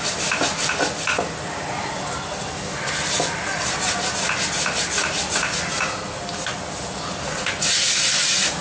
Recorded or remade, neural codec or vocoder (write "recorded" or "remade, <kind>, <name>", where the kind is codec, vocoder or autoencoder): recorded